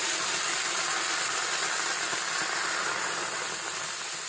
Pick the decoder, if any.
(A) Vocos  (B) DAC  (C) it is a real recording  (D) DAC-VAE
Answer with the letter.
C